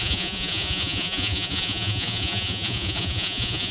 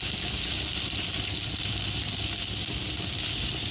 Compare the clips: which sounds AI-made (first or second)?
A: first